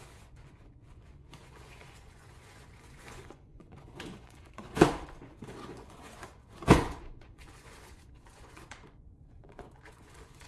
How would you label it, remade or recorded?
remade